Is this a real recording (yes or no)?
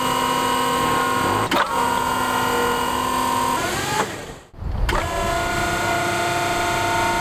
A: yes